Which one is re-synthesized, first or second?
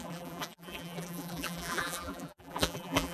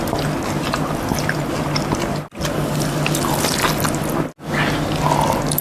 first